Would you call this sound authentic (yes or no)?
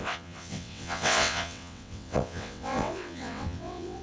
no